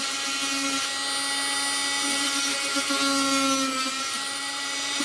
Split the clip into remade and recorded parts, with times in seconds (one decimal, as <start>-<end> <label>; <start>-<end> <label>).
0.0-0.9 remade; 0.9-3.9 recorded; 3.9-5.0 remade